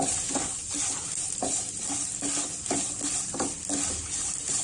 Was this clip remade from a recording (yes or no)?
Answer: no